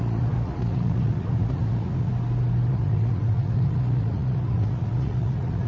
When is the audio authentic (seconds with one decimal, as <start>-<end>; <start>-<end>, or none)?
2.1-2.7